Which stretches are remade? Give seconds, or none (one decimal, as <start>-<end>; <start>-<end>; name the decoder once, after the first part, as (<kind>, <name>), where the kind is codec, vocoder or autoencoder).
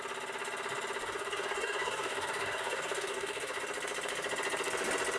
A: 1.0-3.6 (codec, DAC)